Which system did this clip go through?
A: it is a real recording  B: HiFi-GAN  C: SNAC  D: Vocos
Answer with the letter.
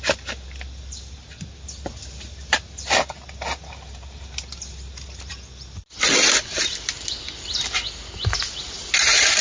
A